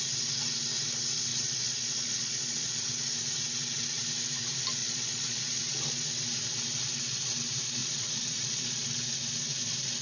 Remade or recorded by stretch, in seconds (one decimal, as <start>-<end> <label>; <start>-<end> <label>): 0.0-1.3 recorded; 1.3-2.7 remade; 2.7-4.8 recorded; 4.8-5.6 remade; 5.6-7.8 recorded; 7.8-8.9 remade; 8.9-10.0 recorded